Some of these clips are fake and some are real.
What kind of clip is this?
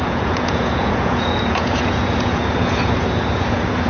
fake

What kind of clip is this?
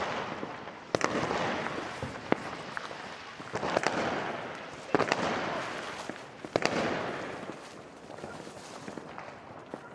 real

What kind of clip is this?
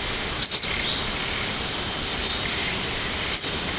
real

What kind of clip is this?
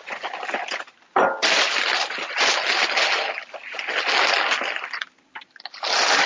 real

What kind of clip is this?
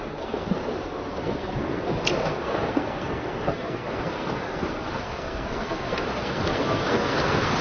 fake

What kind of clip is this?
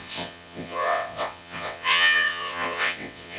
fake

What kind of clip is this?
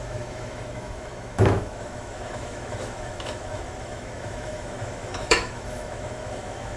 fake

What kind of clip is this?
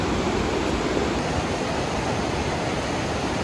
real